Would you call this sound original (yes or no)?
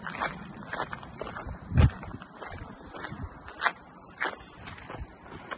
yes